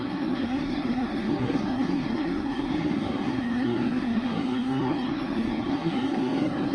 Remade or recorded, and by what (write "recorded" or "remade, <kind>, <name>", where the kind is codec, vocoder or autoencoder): remade, codec, SNAC